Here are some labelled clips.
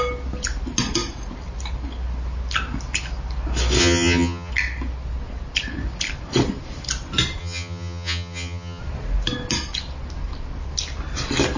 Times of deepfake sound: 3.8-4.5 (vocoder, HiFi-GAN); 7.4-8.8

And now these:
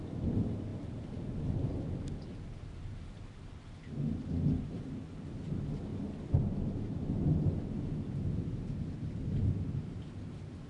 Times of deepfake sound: none

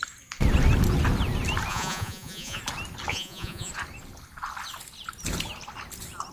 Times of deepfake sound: 1.7-2.6 (vocoder, Vocos); 3.1-3.7

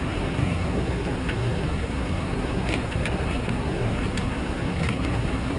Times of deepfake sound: 0.0-5.6 (codec, SNAC)

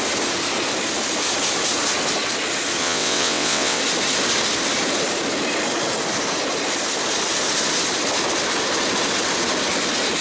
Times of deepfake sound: 2.8-3.8 (vocoder, WaveNeXt)

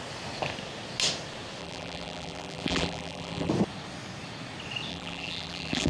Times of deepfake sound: 1.6-3.5 (vocoder, BigVGAN v2); 4.9-5.9